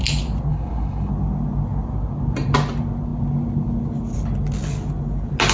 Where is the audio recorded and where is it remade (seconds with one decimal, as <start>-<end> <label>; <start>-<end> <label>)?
0.0-0.5 recorded; 0.5-1.1 remade; 1.1-5.5 recorded